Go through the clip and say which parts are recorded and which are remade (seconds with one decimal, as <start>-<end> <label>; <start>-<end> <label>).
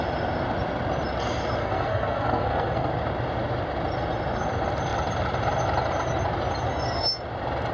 0.0-1.6 recorded; 1.6-2.9 remade; 2.9-7.7 recorded